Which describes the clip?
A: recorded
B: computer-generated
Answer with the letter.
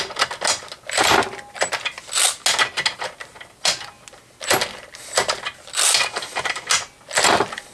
A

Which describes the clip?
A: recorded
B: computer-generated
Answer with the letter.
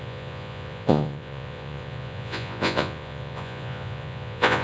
B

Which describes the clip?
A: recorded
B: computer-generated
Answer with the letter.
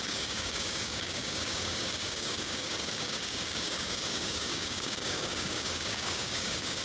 B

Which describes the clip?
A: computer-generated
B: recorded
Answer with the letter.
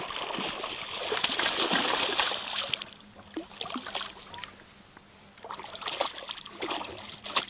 B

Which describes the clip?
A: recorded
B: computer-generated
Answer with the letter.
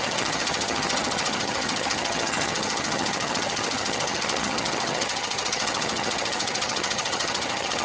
B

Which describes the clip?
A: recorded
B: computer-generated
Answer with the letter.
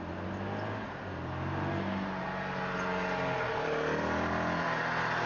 A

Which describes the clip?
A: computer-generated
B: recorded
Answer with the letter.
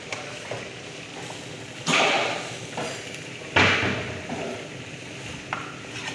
B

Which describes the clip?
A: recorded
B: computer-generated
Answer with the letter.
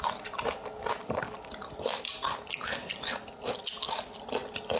A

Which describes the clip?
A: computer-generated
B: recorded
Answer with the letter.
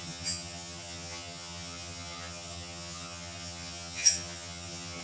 A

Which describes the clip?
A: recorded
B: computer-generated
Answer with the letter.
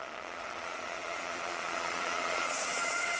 B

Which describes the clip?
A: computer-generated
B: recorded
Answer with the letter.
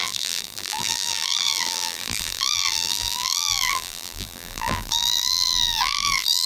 A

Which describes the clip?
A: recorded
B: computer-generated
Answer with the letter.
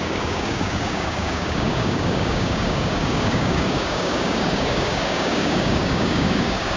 B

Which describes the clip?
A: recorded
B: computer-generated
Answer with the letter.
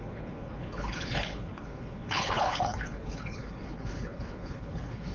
B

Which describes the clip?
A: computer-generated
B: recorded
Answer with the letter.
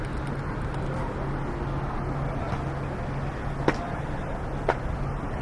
B